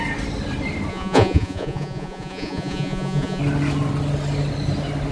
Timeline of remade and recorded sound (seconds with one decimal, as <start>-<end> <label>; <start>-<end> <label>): 0.0-0.9 recorded; 0.9-3.4 remade; 3.4-5.1 recorded